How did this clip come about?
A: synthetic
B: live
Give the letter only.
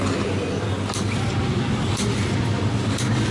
B